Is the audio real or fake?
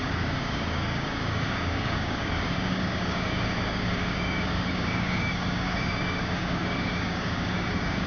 fake